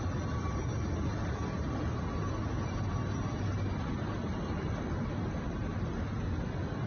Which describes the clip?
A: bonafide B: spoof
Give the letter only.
A